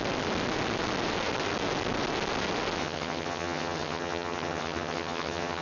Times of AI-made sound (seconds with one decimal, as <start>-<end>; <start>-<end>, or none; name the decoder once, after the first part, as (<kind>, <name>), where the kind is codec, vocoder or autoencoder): 2.8-5.6 (vocoder, HiFi-GAN)